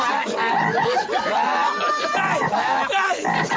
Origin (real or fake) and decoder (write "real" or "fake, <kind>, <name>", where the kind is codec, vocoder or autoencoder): real